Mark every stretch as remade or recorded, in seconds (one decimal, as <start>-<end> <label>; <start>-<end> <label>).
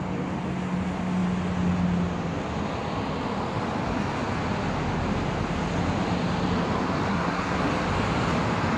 0.0-7.1 recorded; 7.1-7.7 remade; 7.7-8.8 recorded